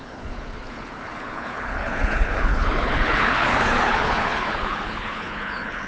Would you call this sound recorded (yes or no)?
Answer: no